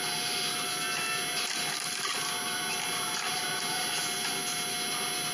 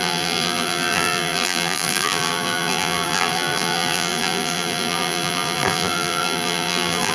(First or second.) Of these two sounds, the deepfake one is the second